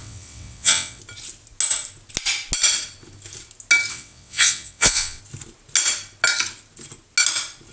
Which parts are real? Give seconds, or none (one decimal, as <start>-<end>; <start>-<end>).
1.0-3.9; 5.2-7.7